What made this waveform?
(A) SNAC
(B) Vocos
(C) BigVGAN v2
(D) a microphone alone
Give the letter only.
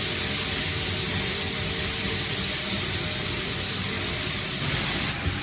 D